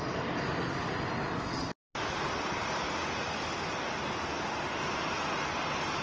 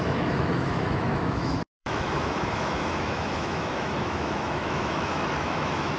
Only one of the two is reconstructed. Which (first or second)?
second